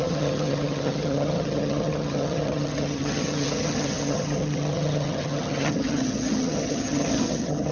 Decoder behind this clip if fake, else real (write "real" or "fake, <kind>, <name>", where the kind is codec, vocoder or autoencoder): fake, vocoder, HiFi-GAN